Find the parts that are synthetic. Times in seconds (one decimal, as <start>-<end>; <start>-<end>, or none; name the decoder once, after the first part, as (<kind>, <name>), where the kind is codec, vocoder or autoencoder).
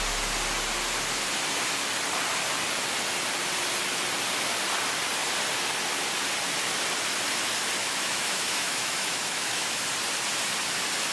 7.8-9.9 (autoencoder, DAC-VAE)